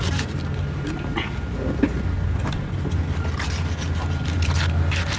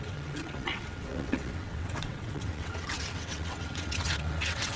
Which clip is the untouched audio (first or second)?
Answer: first